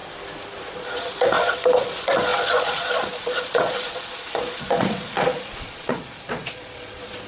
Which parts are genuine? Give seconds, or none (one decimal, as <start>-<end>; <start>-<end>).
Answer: 0.0-0.6